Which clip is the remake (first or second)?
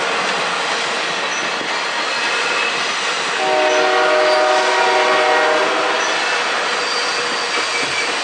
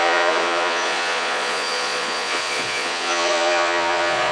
second